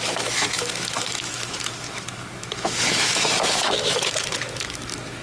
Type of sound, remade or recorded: remade